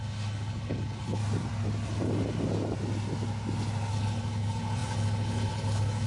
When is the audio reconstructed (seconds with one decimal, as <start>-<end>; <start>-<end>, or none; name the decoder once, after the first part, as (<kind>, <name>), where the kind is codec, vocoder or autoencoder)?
0.0-1.2 (codec, HILCodec); 3.9-6.1